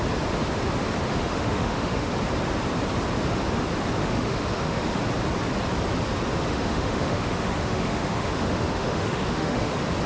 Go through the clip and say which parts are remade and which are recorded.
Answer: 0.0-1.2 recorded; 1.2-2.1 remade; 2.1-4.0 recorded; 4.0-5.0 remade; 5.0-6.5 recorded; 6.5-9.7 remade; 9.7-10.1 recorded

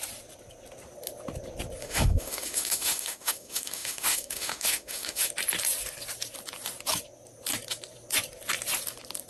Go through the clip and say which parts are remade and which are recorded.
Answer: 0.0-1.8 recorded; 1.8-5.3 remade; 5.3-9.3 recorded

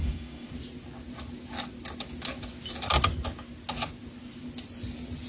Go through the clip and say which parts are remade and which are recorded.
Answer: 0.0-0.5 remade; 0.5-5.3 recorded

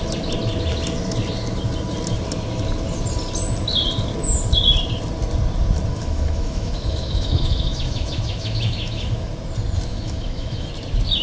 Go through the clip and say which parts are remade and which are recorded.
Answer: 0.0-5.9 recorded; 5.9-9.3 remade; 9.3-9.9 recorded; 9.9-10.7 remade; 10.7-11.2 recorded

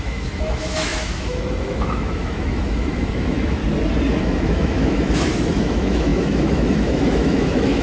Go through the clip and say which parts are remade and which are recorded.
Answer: 0.0-3.6 remade; 3.6-4.2 recorded; 4.2-7.8 remade

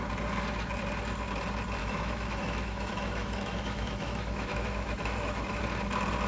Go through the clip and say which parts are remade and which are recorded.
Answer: 0.0-1.8 recorded; 1.8-5.6 remade; 5.6-6.3 recorded

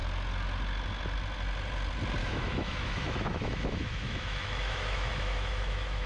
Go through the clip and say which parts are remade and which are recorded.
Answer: 0.0-2.2 recorded; 2.2-6.1 remade